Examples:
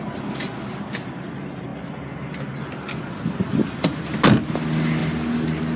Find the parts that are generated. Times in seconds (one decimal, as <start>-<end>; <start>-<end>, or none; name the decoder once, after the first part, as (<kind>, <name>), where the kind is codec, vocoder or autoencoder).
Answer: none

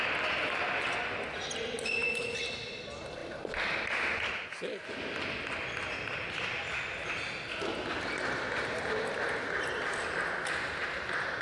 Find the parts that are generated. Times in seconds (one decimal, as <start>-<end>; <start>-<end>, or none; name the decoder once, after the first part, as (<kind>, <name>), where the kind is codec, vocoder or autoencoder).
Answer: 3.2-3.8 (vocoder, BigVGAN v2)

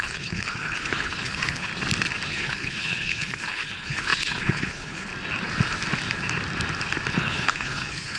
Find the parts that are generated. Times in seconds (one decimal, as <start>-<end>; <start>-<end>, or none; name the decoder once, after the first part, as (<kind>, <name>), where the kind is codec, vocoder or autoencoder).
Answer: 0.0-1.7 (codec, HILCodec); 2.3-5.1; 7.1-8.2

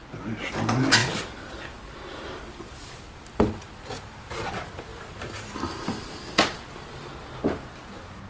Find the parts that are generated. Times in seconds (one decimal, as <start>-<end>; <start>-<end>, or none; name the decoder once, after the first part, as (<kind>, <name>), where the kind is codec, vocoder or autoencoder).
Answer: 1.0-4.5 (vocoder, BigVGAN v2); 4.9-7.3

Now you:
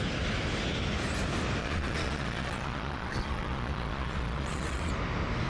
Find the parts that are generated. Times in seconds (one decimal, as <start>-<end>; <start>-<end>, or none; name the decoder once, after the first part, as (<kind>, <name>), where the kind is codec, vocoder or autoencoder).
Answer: 1.6-4.9 (vocoder, Vocos)

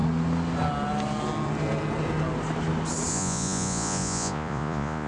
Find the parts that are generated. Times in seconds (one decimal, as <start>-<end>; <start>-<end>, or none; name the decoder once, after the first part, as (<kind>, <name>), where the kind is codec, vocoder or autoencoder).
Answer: 3.1-5.1 (vocoder, Vocos)